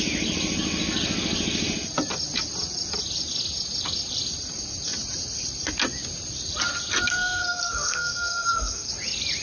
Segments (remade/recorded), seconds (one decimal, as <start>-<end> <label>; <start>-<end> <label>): 0.0-7.1 recorded; 7.1-8.9 remade; 8.9-9.4 recorded